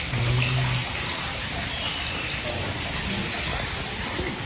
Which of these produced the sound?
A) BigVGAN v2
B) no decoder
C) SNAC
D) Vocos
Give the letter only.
B